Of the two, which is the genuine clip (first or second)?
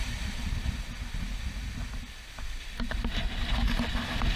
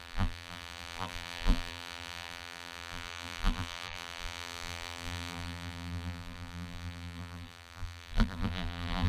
first